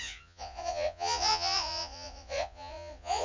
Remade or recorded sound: remade